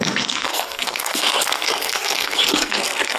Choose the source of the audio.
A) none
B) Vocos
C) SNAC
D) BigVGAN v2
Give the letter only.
C